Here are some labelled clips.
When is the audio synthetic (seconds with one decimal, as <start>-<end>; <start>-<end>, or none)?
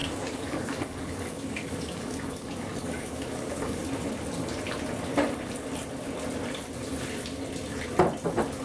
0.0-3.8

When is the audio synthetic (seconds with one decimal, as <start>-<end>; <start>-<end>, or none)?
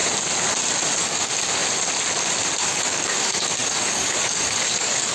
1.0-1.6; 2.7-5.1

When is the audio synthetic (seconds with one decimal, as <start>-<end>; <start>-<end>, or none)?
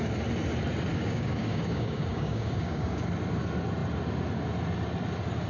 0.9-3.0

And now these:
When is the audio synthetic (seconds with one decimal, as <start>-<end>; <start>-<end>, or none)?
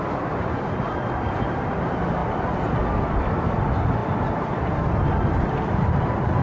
none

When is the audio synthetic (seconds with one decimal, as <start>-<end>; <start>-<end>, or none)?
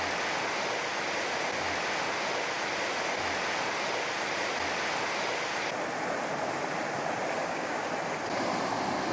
7.4-7.9